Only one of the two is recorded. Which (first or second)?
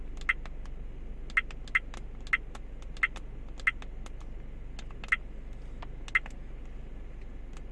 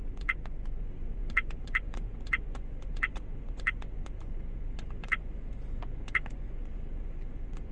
first